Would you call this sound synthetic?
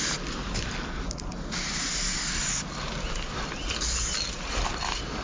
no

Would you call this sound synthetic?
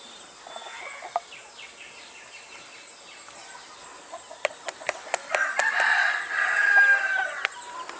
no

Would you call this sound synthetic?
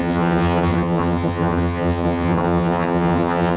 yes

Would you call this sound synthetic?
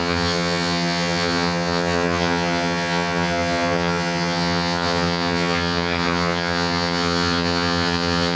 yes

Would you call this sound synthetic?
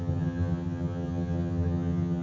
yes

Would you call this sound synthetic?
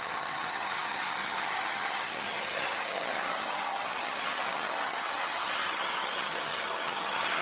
yes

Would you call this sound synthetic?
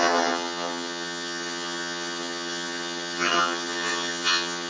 yes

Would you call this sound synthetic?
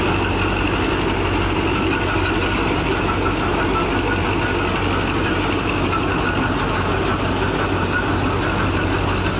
no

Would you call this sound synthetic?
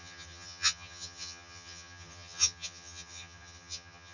yes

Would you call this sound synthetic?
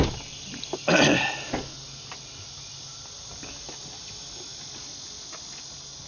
no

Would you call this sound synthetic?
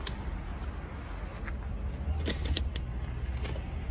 no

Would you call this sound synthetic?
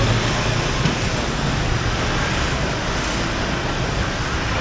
no